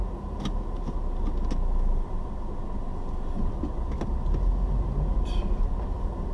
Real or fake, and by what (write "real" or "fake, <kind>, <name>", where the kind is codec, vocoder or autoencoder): real